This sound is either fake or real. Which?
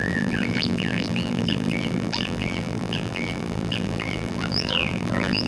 fake